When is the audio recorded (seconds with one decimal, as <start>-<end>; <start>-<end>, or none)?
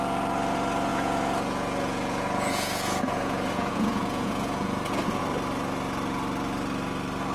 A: 0.0-0.9; 5.2-7.3